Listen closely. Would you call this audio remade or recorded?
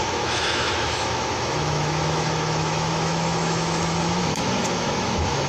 remade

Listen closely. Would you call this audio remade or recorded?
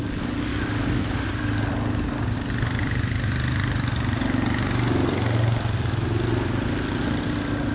recorded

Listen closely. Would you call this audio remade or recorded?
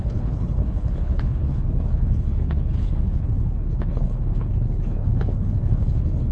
remade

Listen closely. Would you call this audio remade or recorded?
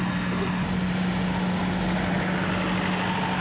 recorded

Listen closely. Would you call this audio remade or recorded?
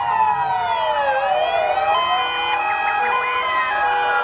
recorded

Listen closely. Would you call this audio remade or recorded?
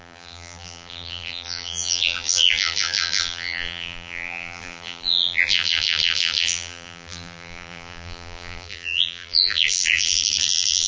remade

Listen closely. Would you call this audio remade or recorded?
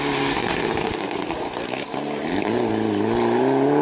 recorded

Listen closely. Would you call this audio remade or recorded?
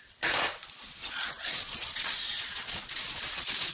remade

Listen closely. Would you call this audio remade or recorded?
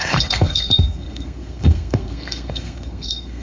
remade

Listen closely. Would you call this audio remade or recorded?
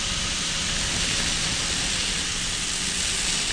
recorded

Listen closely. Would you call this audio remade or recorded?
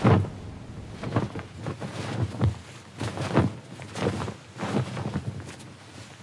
recorded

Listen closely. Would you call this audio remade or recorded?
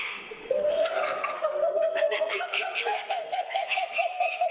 remade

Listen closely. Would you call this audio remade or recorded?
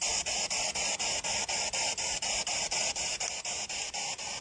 recorded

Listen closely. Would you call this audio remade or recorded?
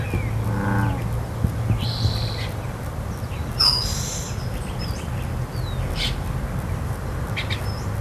recorded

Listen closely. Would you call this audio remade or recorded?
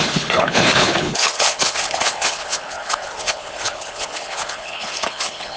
remade